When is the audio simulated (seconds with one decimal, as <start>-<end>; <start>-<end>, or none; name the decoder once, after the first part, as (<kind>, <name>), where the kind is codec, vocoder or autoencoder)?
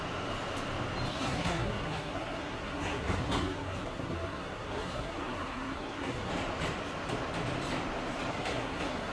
1.1-6.3 (codec, SNAC); 8.3-9.1